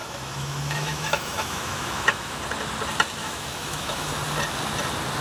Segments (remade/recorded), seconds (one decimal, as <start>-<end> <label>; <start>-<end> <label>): 0.0-2.4 remade; 2.4-3.2 recorded; 3.2-4.1 remade; 4.1-5.2 recorded